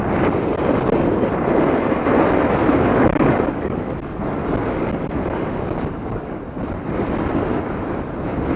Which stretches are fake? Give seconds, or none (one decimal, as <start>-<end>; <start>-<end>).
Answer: 2.9-6.4